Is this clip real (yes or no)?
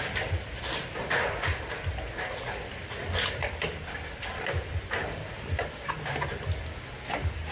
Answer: yes